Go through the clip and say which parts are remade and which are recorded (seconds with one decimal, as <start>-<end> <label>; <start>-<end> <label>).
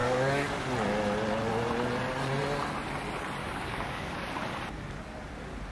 0.0-0.6 remade; 0.6-3.4 recorded; 3.4-4.3 remade; 4.3-5.7 recorded